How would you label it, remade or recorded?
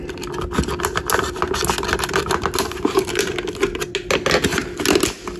recorded